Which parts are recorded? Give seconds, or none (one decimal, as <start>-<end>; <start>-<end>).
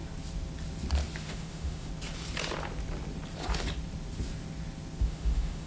0.0-1.2; 1.9-5.0